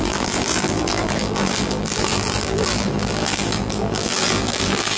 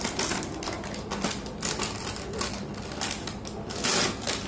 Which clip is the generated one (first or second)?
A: first